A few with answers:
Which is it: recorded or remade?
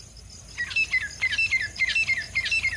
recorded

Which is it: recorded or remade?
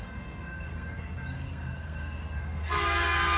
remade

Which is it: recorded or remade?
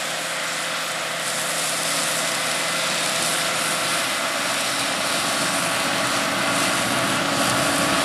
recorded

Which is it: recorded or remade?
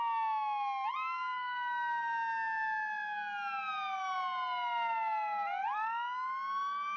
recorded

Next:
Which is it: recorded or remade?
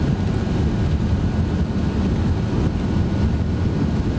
recorded